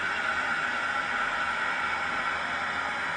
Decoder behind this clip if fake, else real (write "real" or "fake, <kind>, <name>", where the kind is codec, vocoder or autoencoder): real